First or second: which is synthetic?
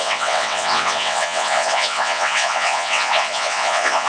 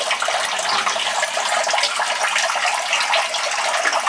first